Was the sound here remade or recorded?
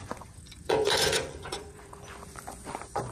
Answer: remade